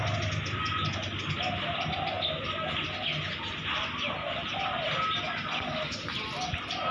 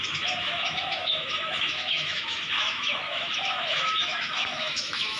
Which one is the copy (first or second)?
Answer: second